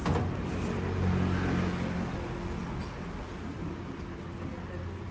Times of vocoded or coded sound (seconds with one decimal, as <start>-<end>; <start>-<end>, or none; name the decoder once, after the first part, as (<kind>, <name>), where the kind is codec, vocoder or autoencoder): 3.1-3.6 (vocoder, BigVGAN v2)